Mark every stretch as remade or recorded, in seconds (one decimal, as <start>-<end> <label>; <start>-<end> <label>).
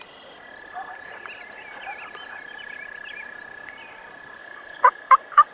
0.0-4.4 recorded; 4.4-5.5 remade